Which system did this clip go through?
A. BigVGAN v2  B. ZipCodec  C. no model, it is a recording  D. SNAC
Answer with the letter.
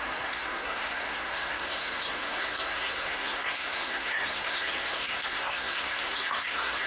D